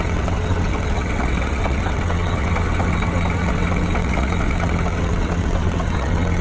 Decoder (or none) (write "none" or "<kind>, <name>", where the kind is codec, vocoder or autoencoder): vocoder, WaveNeXt